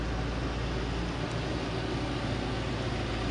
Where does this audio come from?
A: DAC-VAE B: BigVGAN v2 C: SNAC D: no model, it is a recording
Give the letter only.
D